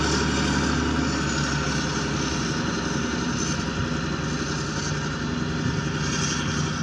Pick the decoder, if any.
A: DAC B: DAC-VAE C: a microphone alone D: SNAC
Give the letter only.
C